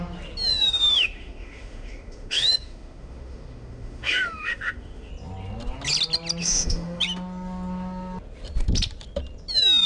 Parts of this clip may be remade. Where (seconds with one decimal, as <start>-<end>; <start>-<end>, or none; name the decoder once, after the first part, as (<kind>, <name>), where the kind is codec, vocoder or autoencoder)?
0.5-5.1 (autoencoder, DAC-VAE); 6.4-7.0